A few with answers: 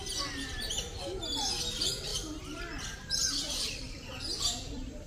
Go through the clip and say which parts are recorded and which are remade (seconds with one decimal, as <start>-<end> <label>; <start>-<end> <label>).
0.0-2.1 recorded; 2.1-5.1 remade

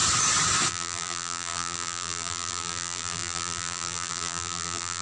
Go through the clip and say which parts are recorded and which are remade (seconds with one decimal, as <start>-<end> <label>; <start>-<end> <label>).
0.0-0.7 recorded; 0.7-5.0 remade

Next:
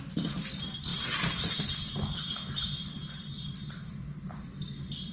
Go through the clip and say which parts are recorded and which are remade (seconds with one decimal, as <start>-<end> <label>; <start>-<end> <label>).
0.0-5.1 recorded

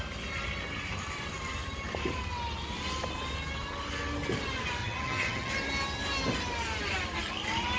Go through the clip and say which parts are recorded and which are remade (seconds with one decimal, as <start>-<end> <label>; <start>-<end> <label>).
0.0-4.8 recorded; 4.8-5.5 remade; 5.5-7.8 recorded

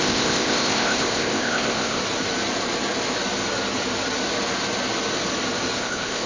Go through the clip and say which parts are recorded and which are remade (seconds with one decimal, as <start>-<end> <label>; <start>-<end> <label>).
0.0-2.0 remade; 2.0-5.8 recorded; 5.8-6.3 remade